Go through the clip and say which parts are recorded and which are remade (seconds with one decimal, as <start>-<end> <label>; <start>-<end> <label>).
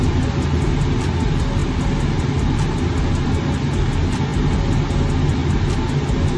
0.0-6.4 recorded